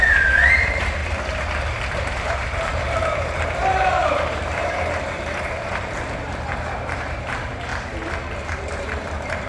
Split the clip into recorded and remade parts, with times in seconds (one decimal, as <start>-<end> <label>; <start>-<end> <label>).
0.0-1.0 remade; 1.0-1.9 recorded; 1.9-7.7 remade; 7.7-8.3 recorded; 8.3-9.5 remade